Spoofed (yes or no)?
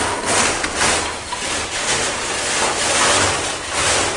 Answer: no